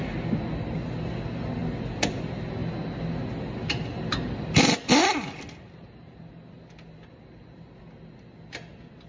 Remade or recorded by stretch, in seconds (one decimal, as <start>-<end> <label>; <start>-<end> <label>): 0.0-9.1 recorded